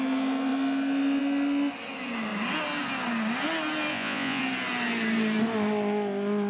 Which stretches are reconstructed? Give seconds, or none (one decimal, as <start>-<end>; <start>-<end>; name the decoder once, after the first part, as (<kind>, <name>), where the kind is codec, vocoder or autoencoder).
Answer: 3.9-4.4 (vocoder, Vocos)